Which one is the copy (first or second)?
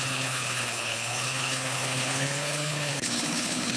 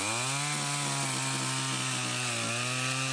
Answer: first